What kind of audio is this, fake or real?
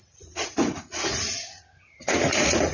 fake